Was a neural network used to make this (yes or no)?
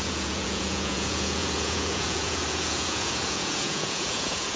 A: yes